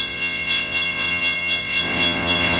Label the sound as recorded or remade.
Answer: remade